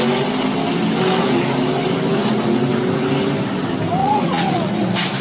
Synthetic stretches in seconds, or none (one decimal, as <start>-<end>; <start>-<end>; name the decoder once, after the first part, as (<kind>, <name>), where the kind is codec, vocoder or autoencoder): 4.0-4.7 (vocoder, Vocos)